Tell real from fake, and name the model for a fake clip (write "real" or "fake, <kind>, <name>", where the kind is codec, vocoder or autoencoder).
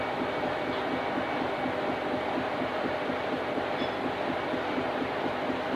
real